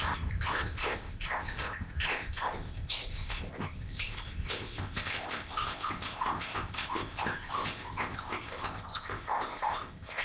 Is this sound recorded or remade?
remade